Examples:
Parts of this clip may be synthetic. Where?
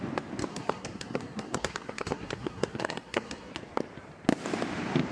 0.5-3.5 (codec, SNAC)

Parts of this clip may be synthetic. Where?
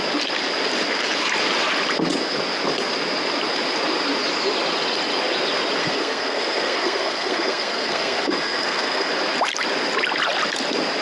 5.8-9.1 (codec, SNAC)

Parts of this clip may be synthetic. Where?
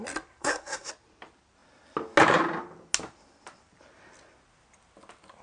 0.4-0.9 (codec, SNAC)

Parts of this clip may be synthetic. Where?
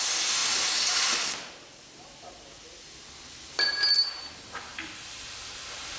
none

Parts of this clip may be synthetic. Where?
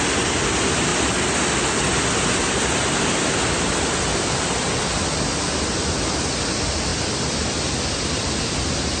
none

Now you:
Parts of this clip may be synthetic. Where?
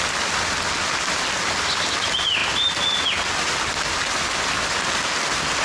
none